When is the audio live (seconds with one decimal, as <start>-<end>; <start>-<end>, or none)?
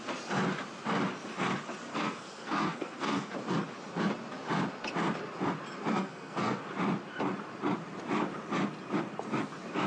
0.0-1.9; 3.3-5.9; 6.6-9.9